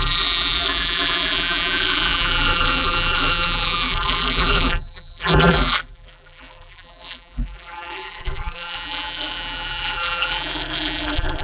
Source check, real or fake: fake